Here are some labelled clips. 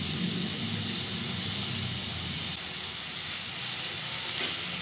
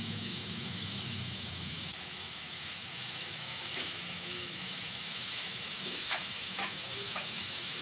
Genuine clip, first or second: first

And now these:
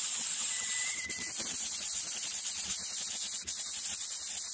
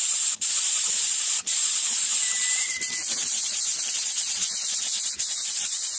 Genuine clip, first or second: second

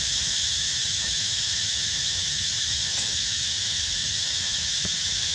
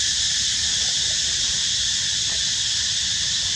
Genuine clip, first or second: second